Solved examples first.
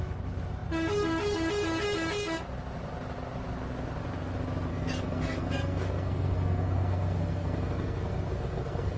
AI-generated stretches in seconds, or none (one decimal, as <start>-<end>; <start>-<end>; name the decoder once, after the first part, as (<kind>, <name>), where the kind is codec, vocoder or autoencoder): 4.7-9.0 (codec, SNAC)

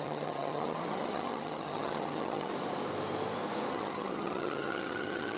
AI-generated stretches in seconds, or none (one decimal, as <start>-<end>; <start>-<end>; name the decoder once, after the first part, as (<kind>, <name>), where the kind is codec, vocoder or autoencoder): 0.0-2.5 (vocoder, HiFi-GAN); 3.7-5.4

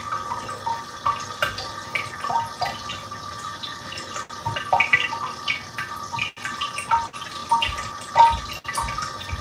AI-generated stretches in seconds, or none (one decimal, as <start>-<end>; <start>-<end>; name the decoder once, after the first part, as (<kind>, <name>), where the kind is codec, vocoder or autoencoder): none

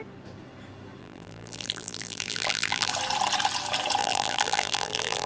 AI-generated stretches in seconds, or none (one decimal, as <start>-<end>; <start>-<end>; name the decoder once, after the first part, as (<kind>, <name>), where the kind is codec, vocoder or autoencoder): 1.0-2.9 (vocoder, BigVGAN v2); 4.0-5.3

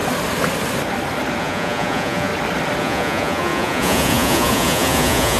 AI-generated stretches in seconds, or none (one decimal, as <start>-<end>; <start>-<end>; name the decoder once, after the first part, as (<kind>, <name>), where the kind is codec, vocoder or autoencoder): 1.4-2.3 (vocoder, Vocos); 2.8-5.4

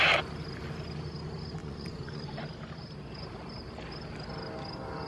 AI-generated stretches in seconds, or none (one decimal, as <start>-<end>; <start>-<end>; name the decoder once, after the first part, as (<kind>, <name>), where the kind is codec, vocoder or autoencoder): 1.6-2.4 (vocoder, Vocos)